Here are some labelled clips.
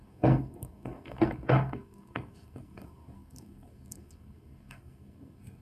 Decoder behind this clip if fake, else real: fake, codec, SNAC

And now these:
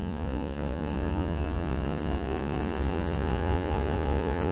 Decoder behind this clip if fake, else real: fake, vocoder, Vocos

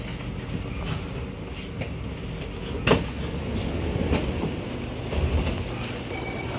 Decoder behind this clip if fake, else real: real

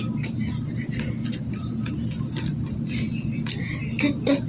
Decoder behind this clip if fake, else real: real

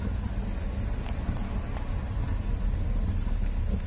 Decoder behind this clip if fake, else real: real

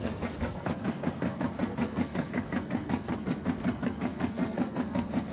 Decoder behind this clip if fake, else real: fake, codec, SNAC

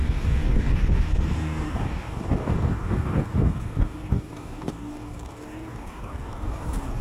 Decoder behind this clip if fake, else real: fake, codec, DAC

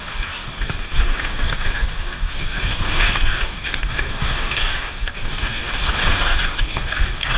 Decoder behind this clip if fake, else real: fake, codec, DAC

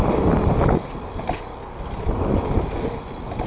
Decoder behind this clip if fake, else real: real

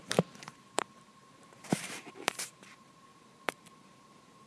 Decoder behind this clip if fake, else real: fake, vocoder, BigVGAN v2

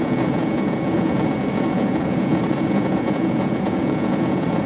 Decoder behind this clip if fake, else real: fake, vocoder, Vocos